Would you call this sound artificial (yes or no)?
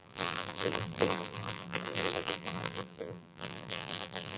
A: yes